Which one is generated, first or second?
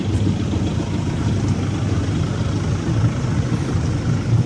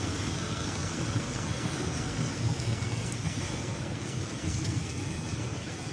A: second